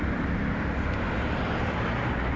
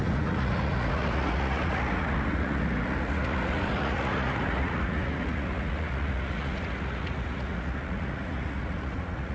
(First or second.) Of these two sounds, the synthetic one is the second